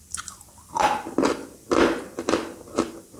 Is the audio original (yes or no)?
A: no